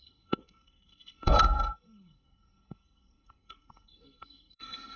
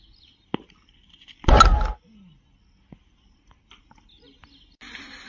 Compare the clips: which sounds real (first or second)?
second